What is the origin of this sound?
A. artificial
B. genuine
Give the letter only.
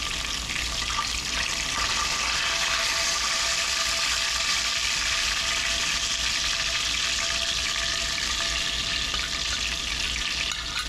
B